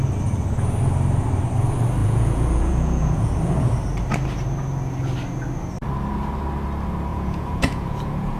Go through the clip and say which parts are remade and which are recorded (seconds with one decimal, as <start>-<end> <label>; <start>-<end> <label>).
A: 0.0-2.0 recorded; 2.0-3.3 remade; 3.3-7.1 recorded; 7.1-8.4 remade